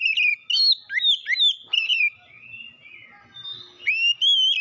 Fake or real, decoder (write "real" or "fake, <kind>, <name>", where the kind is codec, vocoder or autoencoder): real